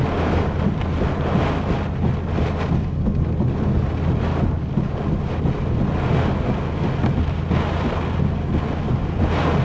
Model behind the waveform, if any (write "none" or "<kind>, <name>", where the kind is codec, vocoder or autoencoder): none